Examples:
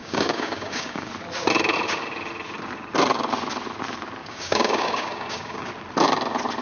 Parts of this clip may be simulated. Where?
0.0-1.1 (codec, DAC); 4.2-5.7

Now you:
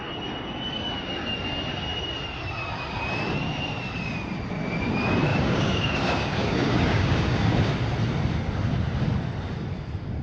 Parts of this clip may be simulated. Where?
5.3-7.7 (codec, DAC)